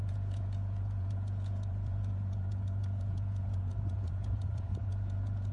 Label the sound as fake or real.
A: fake